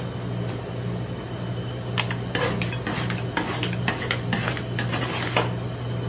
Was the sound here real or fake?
real